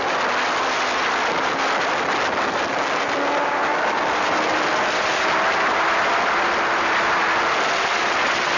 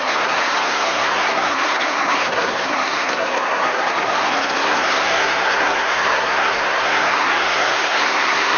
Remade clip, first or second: second